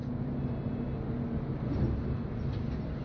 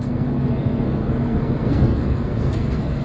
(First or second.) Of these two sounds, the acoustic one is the first